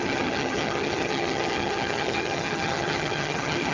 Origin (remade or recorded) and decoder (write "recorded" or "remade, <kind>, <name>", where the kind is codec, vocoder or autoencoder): remade, vocoder, HiFi-GAN